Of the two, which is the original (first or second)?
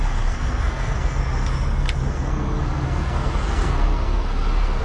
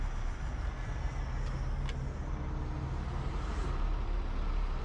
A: second